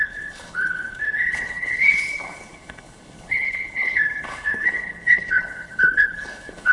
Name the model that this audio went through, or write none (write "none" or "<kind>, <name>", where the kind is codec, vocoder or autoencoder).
codec, HILCodec